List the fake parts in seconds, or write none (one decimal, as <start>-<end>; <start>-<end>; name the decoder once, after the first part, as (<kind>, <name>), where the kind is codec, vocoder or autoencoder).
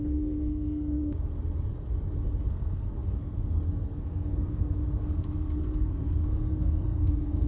0.0-1.0 (codec, SNAC); 2.5-7.5